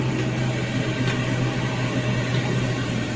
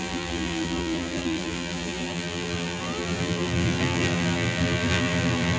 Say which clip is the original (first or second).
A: first